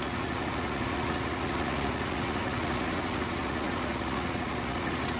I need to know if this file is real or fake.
fake